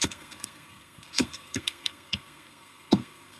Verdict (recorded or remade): remade